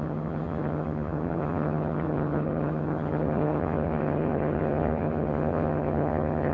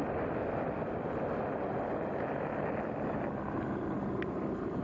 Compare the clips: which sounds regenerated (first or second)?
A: first